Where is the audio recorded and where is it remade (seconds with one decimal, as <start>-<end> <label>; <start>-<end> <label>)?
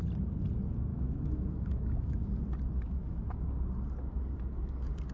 0.0-0.9 recorded; 0.9-2.2 remade; 2.2-5.1 recorded